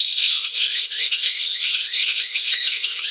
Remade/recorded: remade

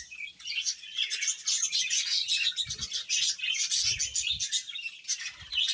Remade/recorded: recorded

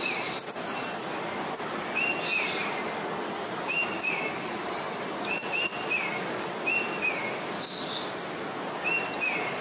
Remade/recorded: recorded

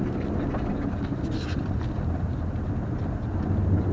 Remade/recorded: recorded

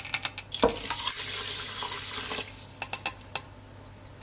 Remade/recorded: recorded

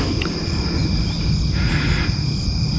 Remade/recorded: recorded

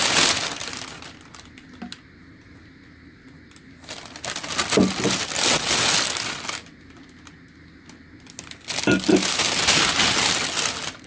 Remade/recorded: recorded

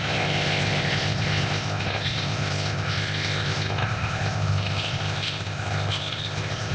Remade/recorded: remade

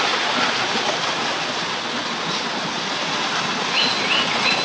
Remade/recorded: recorded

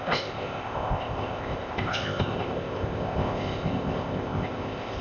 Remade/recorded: remade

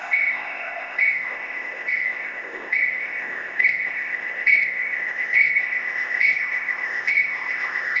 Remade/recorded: remade